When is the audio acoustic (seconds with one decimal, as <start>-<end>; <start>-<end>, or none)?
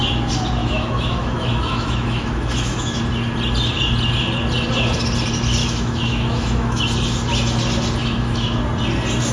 0.0-0.6; 3.0-5.6; 6.8-8.0; 8.6-9.3